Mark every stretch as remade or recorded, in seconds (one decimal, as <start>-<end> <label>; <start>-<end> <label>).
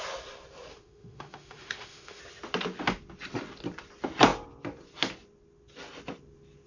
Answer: 0.0-0.7 recorded; 0.7-2.2 remade; 2.2-6.7 recorded